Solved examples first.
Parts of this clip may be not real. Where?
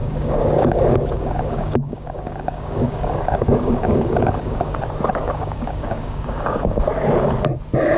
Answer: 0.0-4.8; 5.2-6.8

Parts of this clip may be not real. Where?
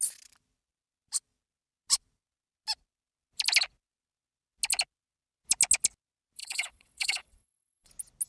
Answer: 6.4-7.9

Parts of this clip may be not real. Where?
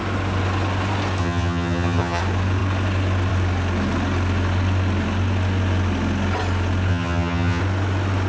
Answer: 1.2-2.2; 6.9-7.6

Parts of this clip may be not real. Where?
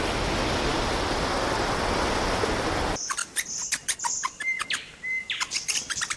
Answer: none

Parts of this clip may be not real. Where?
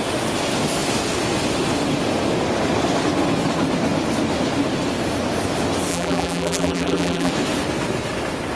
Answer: 5.9-7.3